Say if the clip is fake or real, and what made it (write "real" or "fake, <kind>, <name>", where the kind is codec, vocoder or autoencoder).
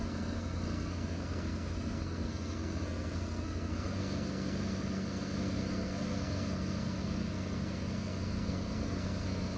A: fake, codec, SNAC